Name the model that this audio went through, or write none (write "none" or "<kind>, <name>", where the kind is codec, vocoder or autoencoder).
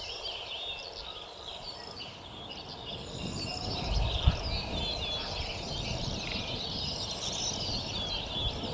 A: none